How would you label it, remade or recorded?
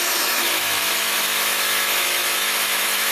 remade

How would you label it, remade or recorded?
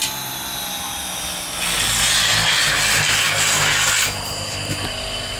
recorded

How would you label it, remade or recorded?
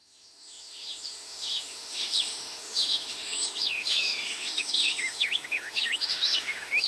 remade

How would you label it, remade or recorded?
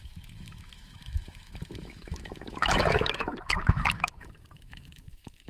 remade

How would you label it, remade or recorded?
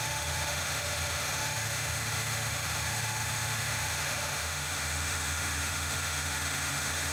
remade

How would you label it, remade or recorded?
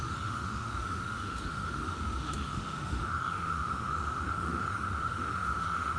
remade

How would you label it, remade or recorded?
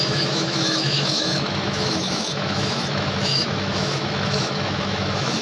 remade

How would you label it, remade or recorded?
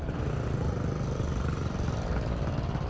recorded